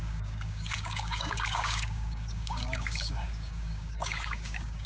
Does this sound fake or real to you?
fake